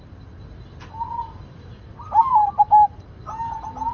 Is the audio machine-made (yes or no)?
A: no